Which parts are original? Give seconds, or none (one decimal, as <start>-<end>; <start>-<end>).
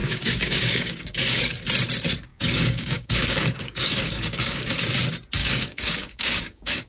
1.4-2.3; 4.7-5.4